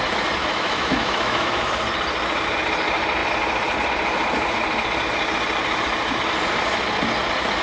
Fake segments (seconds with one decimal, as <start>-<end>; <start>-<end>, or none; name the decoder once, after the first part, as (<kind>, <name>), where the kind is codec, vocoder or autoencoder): 0.4-1.7 (autoencoder, DAC-VAE)